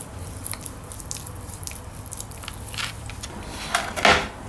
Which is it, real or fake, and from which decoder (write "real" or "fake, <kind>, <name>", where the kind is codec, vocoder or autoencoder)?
real